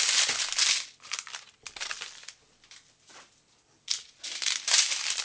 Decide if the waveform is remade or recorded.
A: recorded